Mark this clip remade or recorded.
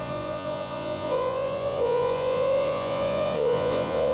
remade